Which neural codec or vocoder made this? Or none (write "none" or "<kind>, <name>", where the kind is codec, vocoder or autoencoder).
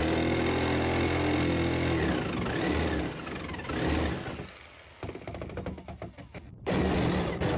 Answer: none